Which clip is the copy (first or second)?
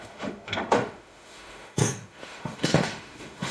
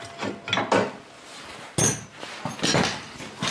first